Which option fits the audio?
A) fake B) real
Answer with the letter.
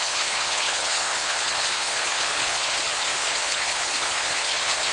A